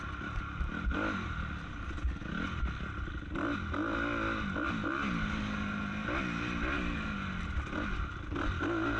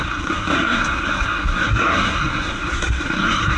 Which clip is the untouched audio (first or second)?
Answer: first